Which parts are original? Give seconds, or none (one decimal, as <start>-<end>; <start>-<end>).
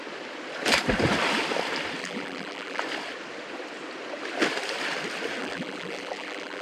0.0-2.0; 2.8-5.4